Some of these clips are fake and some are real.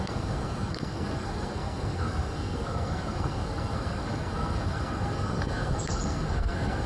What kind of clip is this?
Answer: fake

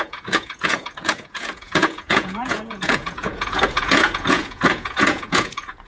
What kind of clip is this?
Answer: fake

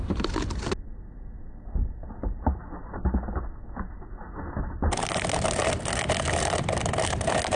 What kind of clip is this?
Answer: real